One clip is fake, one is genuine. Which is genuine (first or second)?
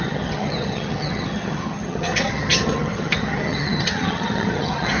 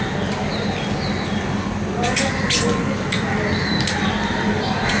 second